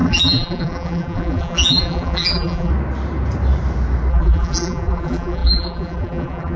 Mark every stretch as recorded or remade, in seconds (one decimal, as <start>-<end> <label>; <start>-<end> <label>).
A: 0.0-2.7 remade; 2.7-4.1 recorded; 4.1-6.6 remade

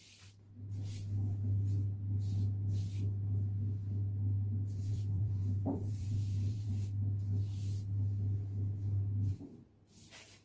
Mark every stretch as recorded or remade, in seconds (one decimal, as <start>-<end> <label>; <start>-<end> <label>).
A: 0.0-4.8 recorded; 4.8-6.7 remade; 6.7-10.4 recorded